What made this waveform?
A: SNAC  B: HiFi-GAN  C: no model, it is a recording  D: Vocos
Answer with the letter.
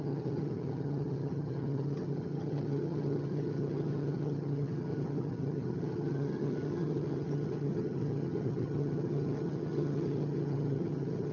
B